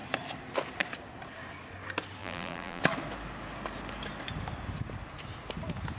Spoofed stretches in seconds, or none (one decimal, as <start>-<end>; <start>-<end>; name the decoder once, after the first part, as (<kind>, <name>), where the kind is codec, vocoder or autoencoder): 2.2-2.8 (vocoder, BigVGAN v2)